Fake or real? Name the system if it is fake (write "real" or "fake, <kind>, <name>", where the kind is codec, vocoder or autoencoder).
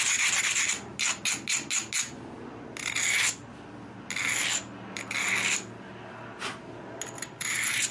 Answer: real